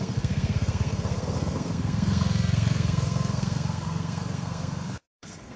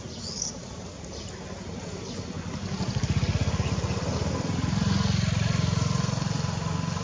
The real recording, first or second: second